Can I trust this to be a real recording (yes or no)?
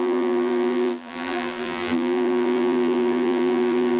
no